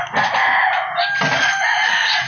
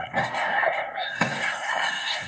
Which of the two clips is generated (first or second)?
second